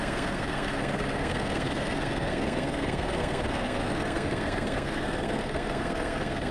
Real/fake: fake